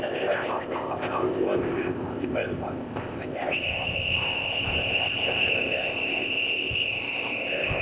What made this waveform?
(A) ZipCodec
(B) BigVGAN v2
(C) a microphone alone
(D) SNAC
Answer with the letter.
A